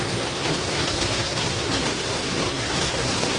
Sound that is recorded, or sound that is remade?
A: remade